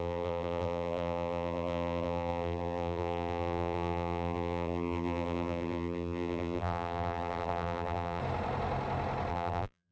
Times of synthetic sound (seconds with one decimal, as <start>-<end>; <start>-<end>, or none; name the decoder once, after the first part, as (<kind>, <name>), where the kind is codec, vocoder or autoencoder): 0.0-8.2 (vocoder, BigVGAN v2); 9.3-9.9